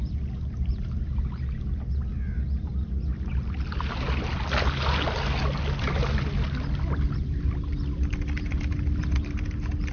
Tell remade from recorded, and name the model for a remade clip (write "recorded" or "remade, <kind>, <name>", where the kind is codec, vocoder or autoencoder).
recorded